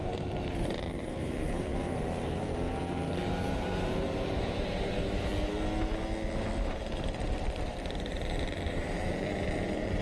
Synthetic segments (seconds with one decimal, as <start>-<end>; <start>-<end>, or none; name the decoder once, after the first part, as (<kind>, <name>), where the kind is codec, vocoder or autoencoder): 0.0-5.3 (vocoder, BigVGAN v2); 6.6-10.0